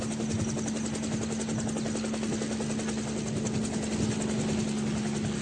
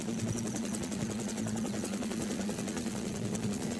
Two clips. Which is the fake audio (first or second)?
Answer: second